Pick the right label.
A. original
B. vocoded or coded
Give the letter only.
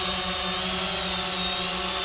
A